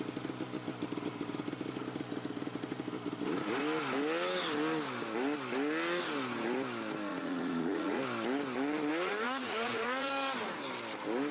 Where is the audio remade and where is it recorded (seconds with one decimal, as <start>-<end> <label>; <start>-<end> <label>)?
0.0-7.1 recorded; 7.1-8.0 remade; 8.0-8.9 recorded; 8.9-10.1 remade; 10.1-11.3 recorded